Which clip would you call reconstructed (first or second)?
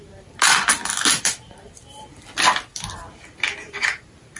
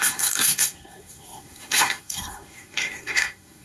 second